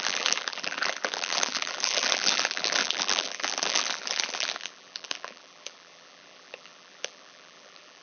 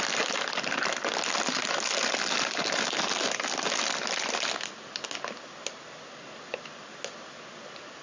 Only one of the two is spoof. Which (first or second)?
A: first